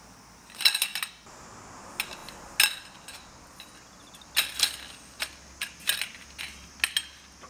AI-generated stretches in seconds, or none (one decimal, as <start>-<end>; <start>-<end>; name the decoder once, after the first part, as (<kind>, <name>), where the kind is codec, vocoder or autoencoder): none